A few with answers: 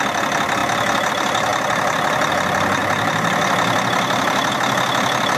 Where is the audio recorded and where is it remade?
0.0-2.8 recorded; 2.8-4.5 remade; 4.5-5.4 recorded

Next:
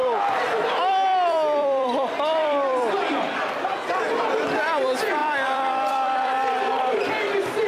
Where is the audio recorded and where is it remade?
0.0-7.7 remade

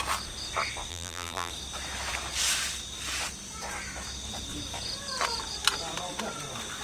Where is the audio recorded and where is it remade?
0.0-0.9 recorded; 0.9-1.5 remade; 1.5-6.8 recorded

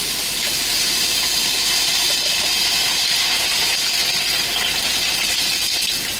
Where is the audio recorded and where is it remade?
0.0-6.2 recorded

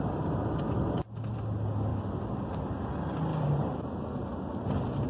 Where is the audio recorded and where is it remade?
0.0-1.9 recorded; 1.9-2.4 remade; 2.4-5.1 recorded

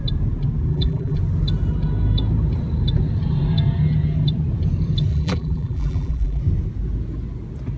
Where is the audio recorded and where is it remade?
0.0-0.7 recorded; 0.7-1.2 remade; 1.2-5.1 recorded; 5.1-6.4 remade; 6.4-7.8 recorded

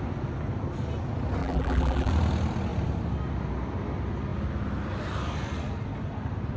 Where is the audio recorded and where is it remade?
0.0-1.4 recorded; 1.4-2.1 remade; 2.1-6.6 recorded